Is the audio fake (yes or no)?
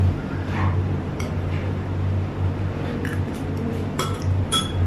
yes